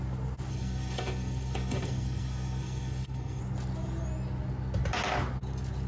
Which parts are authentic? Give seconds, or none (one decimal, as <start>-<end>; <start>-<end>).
0.0-0.5; 3.4-5.9